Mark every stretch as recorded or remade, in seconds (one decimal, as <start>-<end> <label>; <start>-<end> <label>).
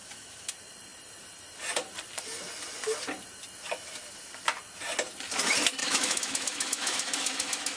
0.0-0.5 remade; 0.5-5.8 recorded; 5.8-7.8 remade